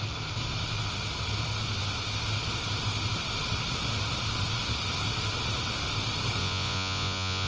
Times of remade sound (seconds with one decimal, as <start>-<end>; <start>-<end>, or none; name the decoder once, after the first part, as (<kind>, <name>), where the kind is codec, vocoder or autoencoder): 6.4-7.5 (vocoder, Vocos)